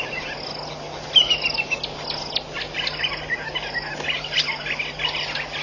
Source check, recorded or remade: recorded